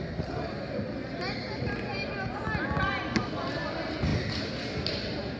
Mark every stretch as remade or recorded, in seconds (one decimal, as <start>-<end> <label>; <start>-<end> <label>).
0.0-5.4 recorded